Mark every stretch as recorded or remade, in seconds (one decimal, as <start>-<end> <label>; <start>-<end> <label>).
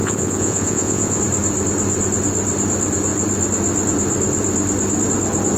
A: 0.0-1.2 remade; 1.2-5.6 recorded